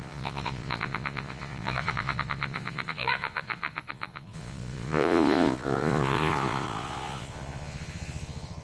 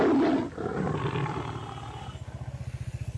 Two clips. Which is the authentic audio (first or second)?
second